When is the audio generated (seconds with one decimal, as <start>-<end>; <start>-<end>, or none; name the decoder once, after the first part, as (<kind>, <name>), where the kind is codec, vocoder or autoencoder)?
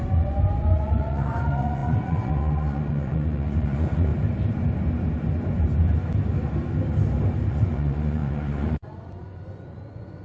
0.0-4.1 (vocoder, Vocos); 7.5-10.2